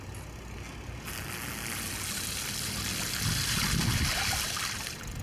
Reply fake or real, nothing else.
real